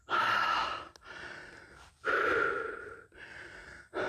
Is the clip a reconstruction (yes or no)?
no